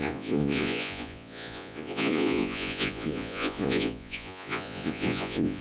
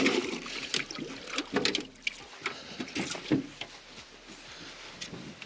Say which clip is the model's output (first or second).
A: first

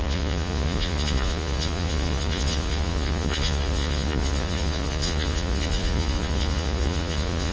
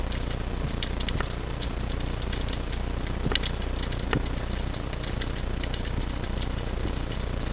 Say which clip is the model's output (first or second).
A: first